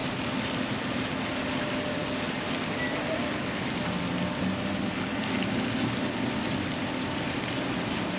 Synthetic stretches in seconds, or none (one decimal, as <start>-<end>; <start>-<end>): none